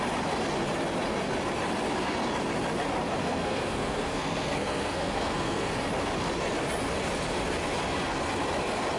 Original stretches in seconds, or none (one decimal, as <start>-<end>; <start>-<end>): 0.0-3.2; 5.7-9.0